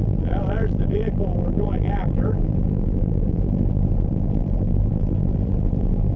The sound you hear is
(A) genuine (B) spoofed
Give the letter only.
B